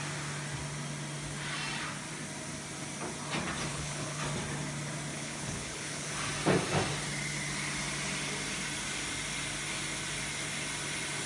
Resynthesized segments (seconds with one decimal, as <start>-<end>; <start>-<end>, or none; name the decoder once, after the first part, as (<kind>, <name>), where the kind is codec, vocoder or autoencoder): 3.7-4.2 (codec, HILCodec); 5.1-6.1